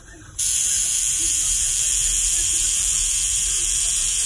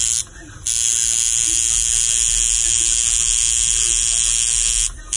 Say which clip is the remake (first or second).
first